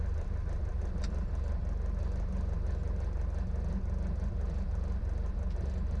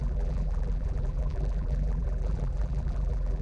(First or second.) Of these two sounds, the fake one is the second